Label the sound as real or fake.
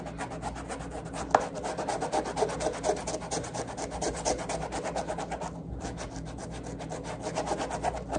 real